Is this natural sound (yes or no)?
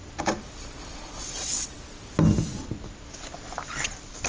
yes